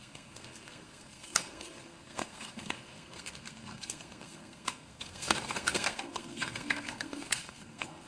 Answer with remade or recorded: remade